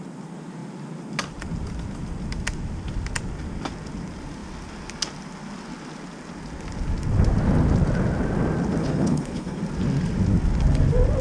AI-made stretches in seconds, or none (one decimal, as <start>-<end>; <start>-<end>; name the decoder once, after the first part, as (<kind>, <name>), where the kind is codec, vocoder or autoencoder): 8.8-9.6 (codec, HILCodec)